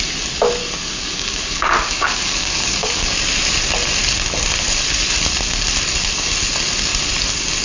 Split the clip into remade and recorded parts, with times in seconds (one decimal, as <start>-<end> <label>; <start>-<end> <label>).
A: 0.0-0.6 recorded; 0.6-3.2 remade; 3.2-7.6 recorded